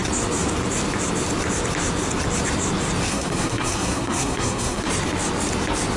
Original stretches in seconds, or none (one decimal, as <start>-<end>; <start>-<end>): 0.0-3.1; 4.9-6.0